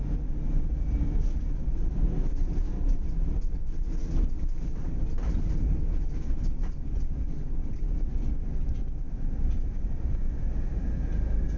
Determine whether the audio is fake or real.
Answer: fake